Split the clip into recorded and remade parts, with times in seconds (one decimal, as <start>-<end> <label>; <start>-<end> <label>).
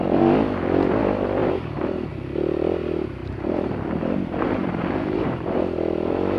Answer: 0.0-1.4 recorded; 1.4-2.1 remade; 2.1-3.2 recorded; 3.2-5.6 remade; 5.6-6.4 recorded